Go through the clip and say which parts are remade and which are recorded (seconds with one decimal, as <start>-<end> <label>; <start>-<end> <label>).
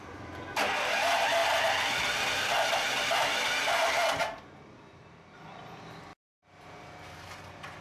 0.0-7.8 recorded